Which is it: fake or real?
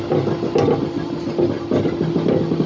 real